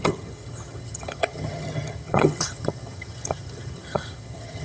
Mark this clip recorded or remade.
remade